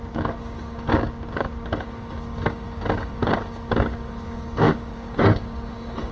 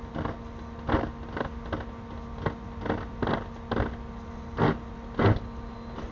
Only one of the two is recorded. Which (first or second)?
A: second